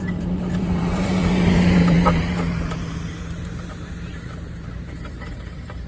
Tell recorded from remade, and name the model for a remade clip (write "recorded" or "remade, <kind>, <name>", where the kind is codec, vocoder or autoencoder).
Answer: remade, vocoder, BigVGAN v2